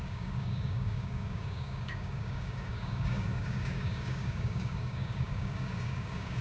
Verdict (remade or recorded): remade